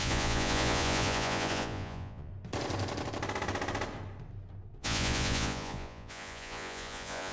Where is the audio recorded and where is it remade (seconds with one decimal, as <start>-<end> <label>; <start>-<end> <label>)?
0.0-2.3 remade; 2.3-4.8 recorded; 4.8-7.3 remade